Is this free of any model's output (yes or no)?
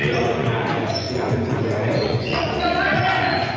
no